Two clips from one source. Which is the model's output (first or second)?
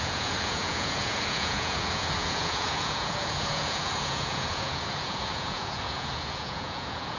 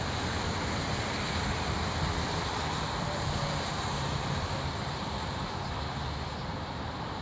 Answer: first